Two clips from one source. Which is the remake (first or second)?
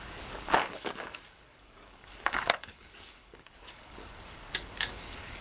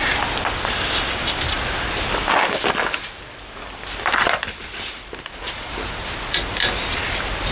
first